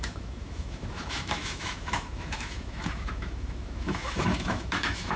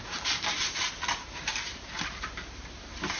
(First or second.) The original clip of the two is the second